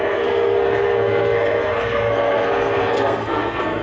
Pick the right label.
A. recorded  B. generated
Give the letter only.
B